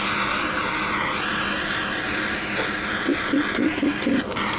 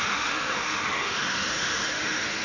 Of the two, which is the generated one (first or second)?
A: second